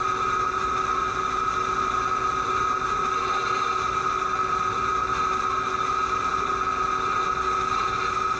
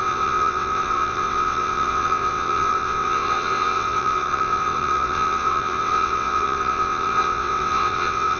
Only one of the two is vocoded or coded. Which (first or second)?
second